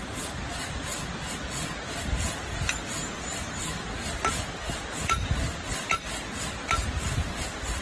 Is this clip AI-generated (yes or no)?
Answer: no